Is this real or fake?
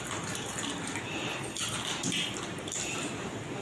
real